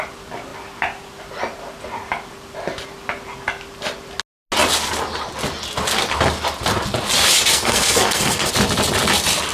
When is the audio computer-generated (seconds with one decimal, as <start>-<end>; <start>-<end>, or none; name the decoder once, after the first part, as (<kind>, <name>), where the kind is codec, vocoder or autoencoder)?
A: 7.5-8.5 (codec, SNAC)